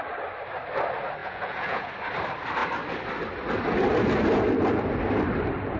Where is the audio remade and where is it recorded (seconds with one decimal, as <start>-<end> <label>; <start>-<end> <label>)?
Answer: 0.0-1.2 recorded; 1.2-1.9 remade; 1.9-5.8 recorded